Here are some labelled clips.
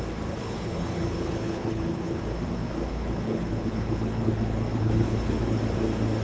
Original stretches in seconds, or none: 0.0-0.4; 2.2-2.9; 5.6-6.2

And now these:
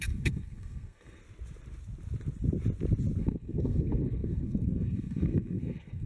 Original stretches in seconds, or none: 1.2-3.2

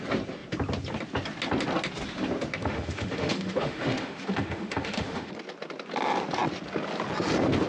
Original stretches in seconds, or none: 0.0-2.6; 5.3-7.7

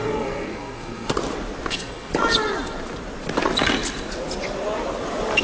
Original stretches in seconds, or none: 1.1-1.7; 2.1-5.4

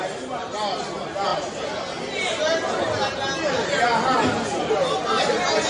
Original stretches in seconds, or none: 0.0-5.7

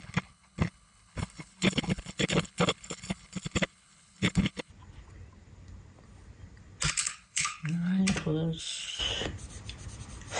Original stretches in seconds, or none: 4.7-6.9; 8.0-8.6; 9.0-10.4

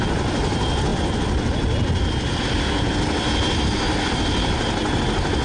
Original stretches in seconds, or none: 0.0-5.4

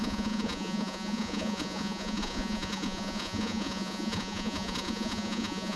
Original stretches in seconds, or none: none